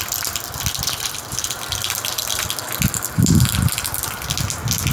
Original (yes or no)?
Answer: yes